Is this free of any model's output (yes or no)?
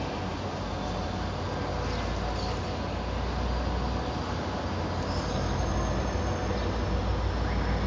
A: yes